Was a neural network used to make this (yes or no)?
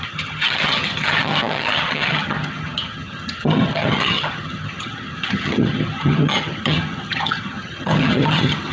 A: yes